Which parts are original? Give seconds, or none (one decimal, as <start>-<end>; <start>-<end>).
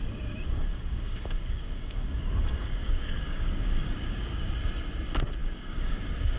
0.0-0.7; 4.5-5.4; 6.0-6.4